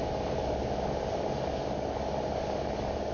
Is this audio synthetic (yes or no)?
yes